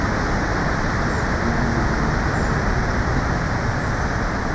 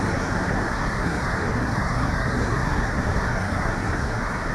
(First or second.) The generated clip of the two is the second